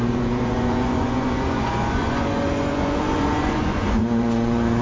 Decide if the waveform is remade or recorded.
remade